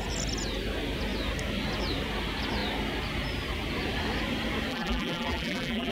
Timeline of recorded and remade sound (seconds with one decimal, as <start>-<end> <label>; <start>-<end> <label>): 0.0-4.7 recorded; 4.7-5.9 remade